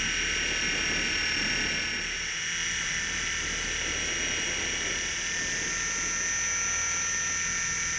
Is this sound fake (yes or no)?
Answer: no